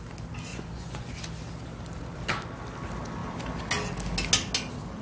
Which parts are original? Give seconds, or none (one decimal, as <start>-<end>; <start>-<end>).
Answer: 0.0-0.5; 1.1-5.0